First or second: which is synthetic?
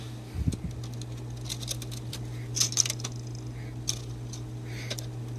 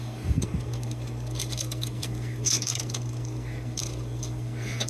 second